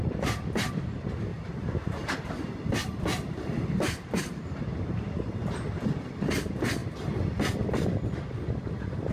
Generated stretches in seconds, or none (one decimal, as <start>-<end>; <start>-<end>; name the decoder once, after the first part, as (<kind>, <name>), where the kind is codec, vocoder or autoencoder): 1.3-5.3 (vocoder, BigVGAN v2)